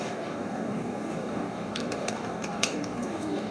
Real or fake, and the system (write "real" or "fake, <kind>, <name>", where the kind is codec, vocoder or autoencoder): fake, codec, DAC